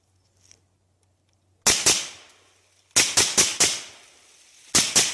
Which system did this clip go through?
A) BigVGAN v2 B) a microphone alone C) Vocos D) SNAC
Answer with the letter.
B